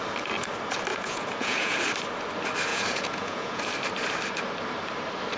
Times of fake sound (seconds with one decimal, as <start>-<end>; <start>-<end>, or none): 0.9-1.8; 2.7-3.6